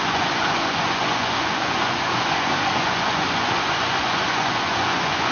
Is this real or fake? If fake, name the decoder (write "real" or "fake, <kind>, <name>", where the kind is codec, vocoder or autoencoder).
fake, vocoder, Vocos